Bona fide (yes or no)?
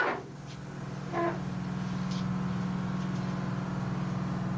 yes